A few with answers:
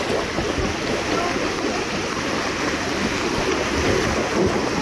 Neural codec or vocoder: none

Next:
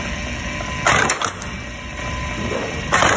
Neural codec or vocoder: none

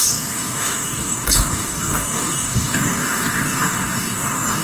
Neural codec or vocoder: codec, DAC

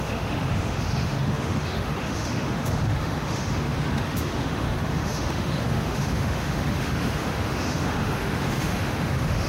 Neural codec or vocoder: autoencoder, DAC-VAE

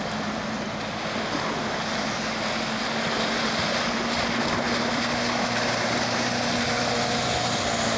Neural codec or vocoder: none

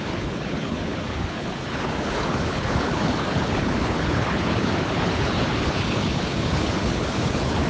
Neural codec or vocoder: codec, HILCodec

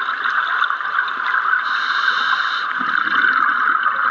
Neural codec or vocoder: none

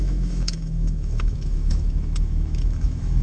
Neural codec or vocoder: autoencoder, DAC-VAE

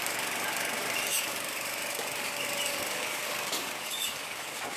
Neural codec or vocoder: codec, DAC